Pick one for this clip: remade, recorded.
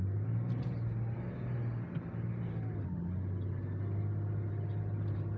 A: recorded